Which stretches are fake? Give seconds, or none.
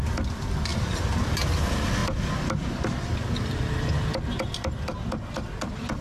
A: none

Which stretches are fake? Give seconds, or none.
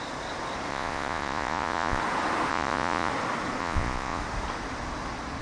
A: 0.7-2.0; 2.5-3.1; 3.6-4.2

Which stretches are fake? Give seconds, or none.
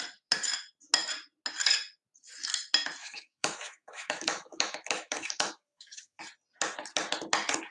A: 3.0-6.2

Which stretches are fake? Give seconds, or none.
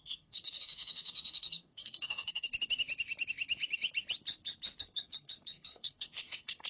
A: 0.0-2.5; 4.8-6.7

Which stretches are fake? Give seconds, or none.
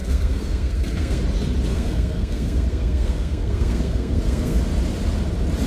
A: 0.0-1.2; 1.7-4.6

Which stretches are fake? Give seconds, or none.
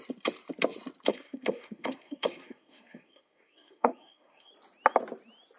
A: 1.1-4.5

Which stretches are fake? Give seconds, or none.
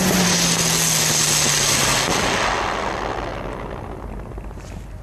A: none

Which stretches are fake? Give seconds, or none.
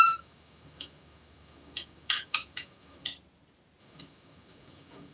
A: 0.0-3.1; 3.8-5.1